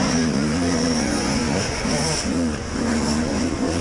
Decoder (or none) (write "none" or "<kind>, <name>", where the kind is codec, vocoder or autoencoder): vocoder, Vocos